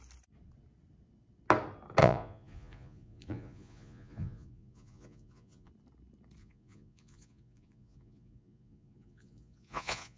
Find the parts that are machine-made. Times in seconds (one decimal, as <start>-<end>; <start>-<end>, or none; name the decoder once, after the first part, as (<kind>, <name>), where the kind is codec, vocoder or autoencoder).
2.0-5.7 (vocoder, Vocos); 6.4-10.2